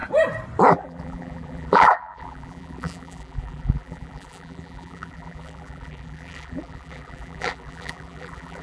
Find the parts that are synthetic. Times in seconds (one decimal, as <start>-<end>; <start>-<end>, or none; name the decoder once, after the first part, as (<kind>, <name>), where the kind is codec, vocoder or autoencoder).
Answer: 0.7-8.6 (vocoder, BigVGAN v2)